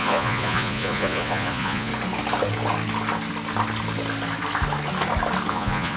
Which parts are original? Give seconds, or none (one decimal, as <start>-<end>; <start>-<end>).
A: 1.9-5.5